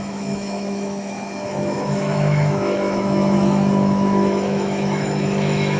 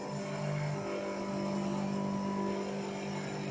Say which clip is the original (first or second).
second